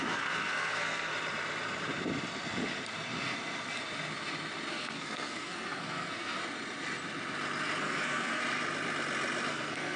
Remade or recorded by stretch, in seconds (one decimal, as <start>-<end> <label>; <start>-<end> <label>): 0.0-1.1 remade; 1.1-4.7 recorded; 4.7-6.4 remade; 6.4-7.8 recorded; 7.8-8.4 remade; 8.4-9.5 recorded; 9.5-10.0 remade